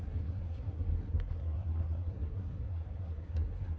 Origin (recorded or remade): remade